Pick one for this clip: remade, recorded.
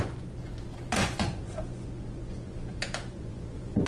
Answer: remade